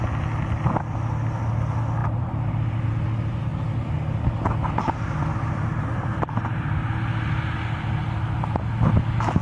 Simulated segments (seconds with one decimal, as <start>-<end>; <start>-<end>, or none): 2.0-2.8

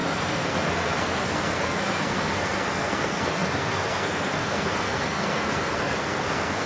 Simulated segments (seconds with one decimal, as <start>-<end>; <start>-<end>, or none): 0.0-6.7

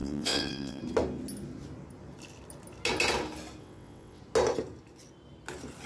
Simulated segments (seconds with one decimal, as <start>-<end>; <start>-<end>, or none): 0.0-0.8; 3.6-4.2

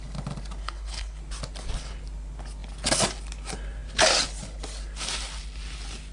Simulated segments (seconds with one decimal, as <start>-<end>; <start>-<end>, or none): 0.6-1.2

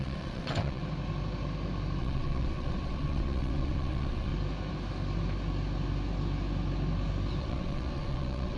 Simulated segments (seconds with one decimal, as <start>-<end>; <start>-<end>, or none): 0.0-0.8; 2.0-4.3; 7.4-8.6

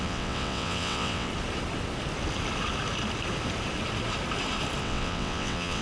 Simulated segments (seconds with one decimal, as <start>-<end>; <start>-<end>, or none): 0.0-1.3; 4.8-5.8

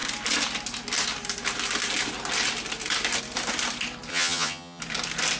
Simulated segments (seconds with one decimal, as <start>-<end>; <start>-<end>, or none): 4.1-4.8